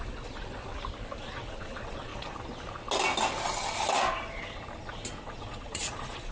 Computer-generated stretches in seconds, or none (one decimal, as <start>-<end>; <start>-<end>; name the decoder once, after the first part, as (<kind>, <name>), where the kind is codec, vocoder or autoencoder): 0.0-0.7 (vocoder, Vocos); 1.2-2.1; 5.3-6.3